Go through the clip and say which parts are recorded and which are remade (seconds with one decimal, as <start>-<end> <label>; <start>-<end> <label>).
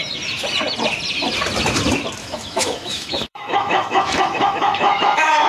0.0-2.2 recorded; 2.2-5.5 remade